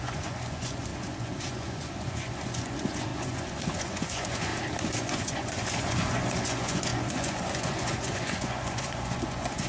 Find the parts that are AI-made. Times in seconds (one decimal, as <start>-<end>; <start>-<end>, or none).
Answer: 0.0-4.5; 5.0-9.7